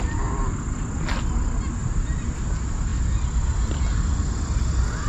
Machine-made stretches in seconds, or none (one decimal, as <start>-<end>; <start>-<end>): none